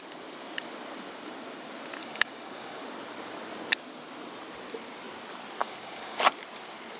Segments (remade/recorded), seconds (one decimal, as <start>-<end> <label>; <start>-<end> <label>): 0.0-2.0 recorded; 2.0-2.8 remade; 2.8-5.6 recorded; 5.6-6.2 remade; 6.2-7.0 recorded